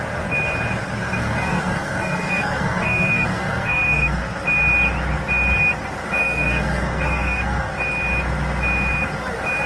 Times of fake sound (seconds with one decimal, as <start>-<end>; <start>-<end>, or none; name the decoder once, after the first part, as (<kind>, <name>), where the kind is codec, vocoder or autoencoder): 1.2-4.2 (codec, SNAC); 6.2-7.7